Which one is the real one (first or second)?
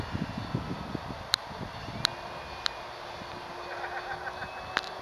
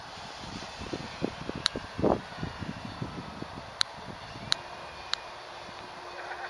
first